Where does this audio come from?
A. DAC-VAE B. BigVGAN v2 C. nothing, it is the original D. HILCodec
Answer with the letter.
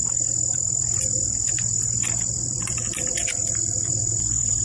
B